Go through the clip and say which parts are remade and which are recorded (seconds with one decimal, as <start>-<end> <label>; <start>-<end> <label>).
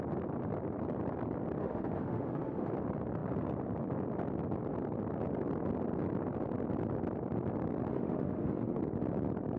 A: 0.0-1.6 recorded; 1.6-2.7 remade; 2.7-7.9 recorded; 7.9-8.8 remade; 8.8-9.6 recorded